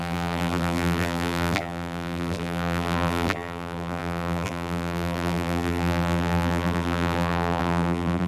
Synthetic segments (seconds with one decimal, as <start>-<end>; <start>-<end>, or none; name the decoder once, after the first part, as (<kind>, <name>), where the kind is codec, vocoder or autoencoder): 0.0-8.3 (vocoder, BigVGAN v2)